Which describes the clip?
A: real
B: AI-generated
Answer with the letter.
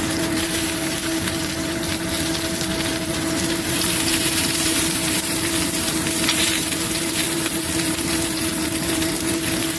B